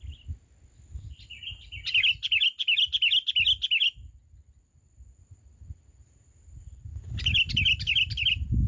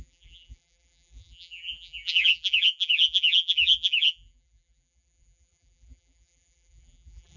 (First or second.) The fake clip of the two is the second